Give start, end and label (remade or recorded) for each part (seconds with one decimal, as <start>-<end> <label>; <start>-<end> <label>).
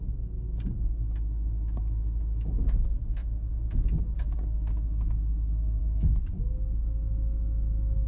0.0-5.8 recorded; 5.8-6.4 remade; 6.4-8.1 recorded